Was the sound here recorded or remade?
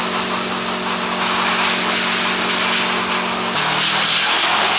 recorded